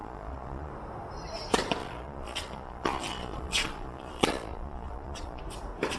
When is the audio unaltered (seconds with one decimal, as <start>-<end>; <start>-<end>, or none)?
0.7-1.8; 5.4-6.0